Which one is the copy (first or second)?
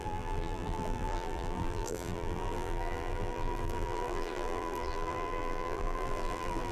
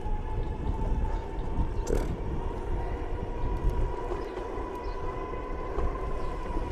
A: first